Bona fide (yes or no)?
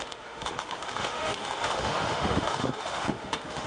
no